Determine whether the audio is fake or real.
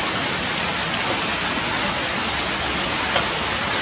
real